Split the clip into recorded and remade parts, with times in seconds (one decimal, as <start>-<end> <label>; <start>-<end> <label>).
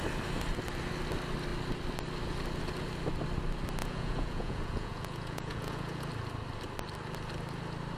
0.0-3.8 recorded; 3.8-6.1 remade; 6.1-8.0 recorded